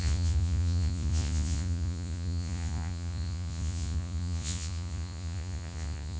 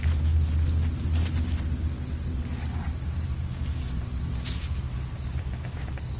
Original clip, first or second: second